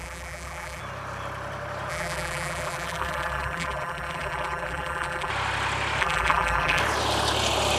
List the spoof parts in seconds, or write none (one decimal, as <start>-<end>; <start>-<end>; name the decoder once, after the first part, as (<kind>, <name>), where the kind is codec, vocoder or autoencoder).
0.0-0.8 (vocoder, BigVGAN v2); 1.9-5.3; 6.0-6.8